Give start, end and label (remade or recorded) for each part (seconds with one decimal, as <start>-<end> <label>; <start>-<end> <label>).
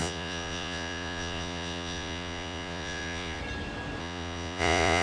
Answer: 0.0-3.4 remade; 3.4-4.0 recorded; 4.0-5.0 remade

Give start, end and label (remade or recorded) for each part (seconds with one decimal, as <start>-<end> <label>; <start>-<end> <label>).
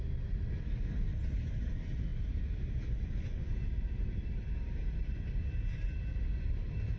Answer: 0.0-7.0 recorded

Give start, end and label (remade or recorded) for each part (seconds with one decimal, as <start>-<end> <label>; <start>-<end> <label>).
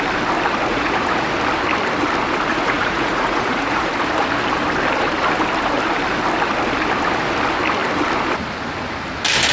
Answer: 0.0-0.7 recorded; 0.7-1.3 remade; 1.3-2.5 recorded; 2.5-3.9 remade; 3.9-9.5 recorded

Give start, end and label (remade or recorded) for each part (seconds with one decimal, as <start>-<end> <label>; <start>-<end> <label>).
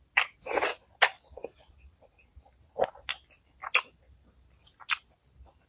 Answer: 0.0-5.7 recorded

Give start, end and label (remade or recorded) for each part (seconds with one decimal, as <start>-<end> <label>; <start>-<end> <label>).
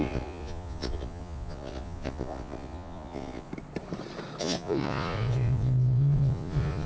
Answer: 0.0-3.5 remade; 3.5-4.4 recorded; 4.4-6.9 remade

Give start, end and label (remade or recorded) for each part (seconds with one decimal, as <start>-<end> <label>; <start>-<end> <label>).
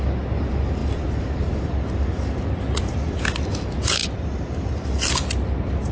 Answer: 0.0-5.9 recorded